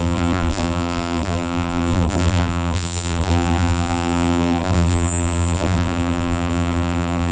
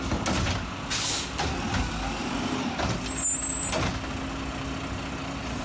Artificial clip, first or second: first